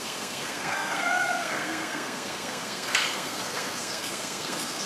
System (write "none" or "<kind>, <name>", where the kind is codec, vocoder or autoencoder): codec, SNAC